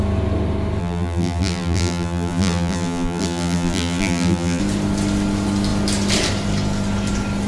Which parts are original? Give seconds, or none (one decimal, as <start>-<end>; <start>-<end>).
0.0-0.8; 4.6-7.5